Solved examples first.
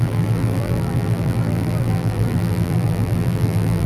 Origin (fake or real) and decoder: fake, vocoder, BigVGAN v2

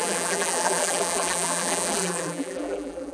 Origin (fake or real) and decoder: fake, vocoder, BigVGAN v2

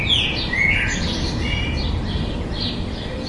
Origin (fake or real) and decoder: real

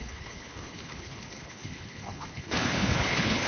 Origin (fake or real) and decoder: fake, codec, HILCodec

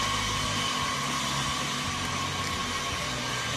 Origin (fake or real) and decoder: real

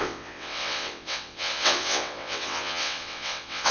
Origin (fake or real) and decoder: fake, vocoder, WaveNeXt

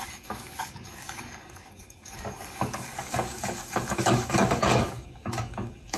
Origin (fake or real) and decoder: fake, codec, DAC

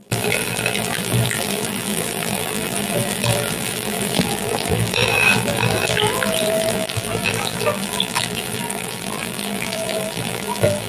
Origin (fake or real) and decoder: fake, vocoder, BigVGAN v2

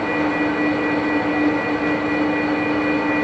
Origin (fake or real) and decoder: real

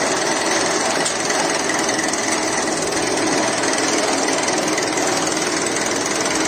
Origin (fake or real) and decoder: real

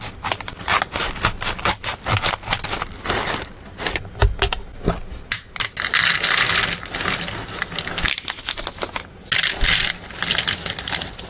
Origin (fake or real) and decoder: real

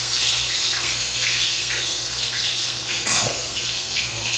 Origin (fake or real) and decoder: fake, codec, SNAC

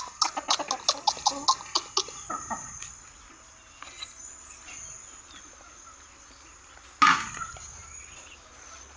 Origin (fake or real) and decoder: real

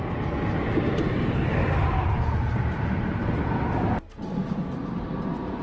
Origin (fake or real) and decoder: real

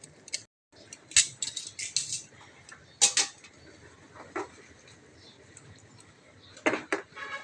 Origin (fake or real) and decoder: real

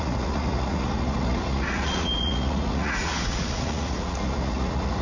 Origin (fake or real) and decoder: fake, vocoder, Vocos